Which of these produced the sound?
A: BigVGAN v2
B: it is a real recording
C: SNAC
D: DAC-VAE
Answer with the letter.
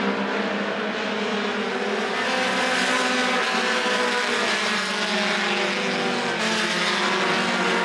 B